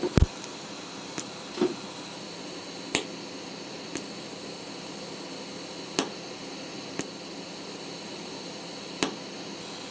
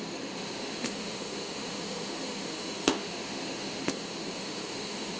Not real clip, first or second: second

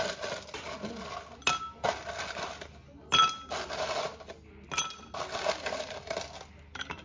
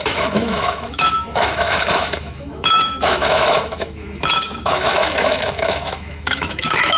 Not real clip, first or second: second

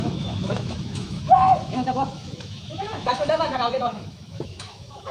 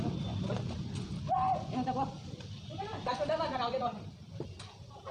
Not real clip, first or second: first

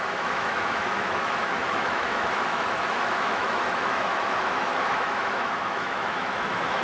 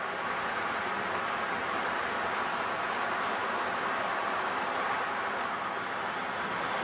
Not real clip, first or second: first